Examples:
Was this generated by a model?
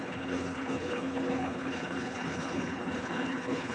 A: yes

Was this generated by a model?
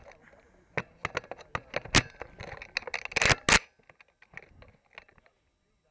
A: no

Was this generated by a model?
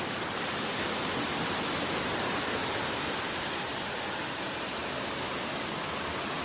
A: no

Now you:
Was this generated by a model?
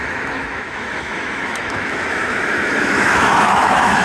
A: yes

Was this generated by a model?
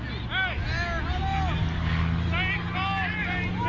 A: no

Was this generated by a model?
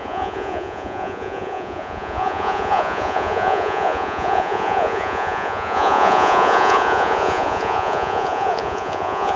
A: yes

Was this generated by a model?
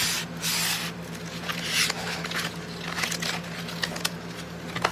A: no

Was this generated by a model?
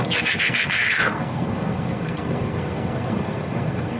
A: yes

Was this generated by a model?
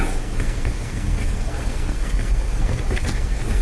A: yes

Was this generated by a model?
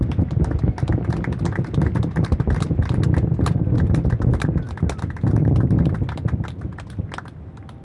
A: no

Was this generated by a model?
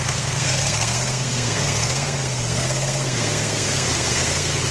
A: yes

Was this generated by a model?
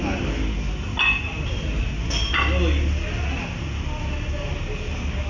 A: no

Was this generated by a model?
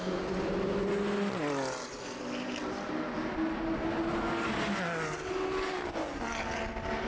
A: no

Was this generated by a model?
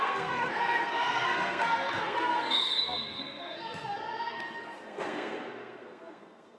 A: yes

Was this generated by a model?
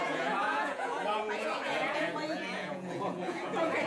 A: yes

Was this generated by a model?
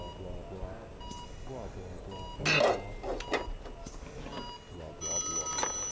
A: no